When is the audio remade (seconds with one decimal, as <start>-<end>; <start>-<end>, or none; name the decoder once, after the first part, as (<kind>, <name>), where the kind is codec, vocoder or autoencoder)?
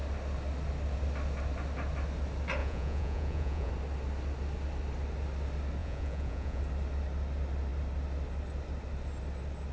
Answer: 2.6-3.7 (vocoder, Vocos); 5.8-6.6